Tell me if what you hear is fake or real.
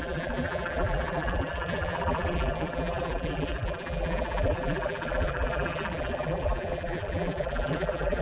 fake